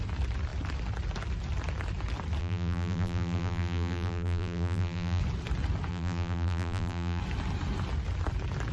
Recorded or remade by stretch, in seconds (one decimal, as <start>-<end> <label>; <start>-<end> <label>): 0.0-2.4 recorded; 2.4-5.2 remade; 5.2-5.9 recorded; 5.9-7.2 remade; 7.2-8.7 recorded